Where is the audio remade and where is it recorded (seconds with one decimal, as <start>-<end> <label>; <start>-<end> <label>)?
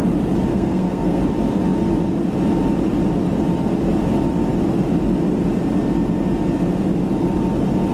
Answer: 0.0-0.5 recorded; 0.5-1.2 remade; 1.2-7.9 recorded